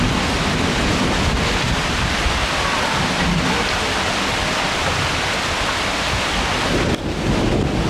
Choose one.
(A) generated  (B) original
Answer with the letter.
B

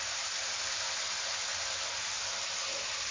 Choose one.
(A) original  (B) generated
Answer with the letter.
A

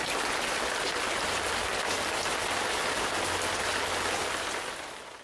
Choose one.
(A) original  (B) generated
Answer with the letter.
A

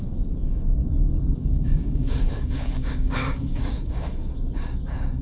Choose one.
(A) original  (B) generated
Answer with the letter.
B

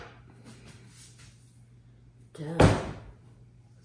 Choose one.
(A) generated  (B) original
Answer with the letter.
B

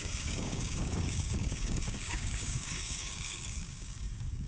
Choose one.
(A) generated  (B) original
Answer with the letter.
A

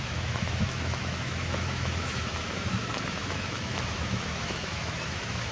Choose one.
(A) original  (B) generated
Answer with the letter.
B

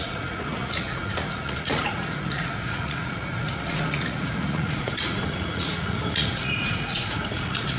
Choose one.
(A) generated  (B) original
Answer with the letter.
A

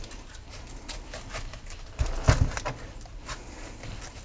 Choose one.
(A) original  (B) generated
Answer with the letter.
A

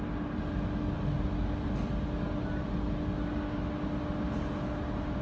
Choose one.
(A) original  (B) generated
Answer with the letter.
A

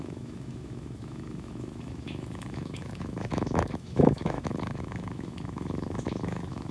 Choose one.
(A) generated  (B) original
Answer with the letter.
A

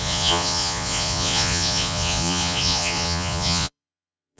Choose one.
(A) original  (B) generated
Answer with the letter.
B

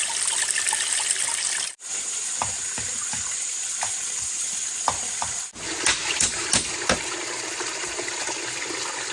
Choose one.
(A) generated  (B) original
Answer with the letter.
B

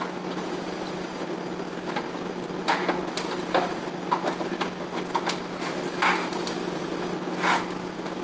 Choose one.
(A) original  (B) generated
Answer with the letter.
A